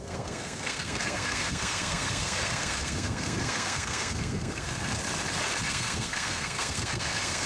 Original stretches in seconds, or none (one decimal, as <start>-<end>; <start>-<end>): 5.0-5.7